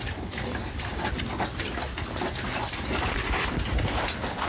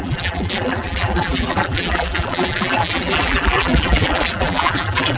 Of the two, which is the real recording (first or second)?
first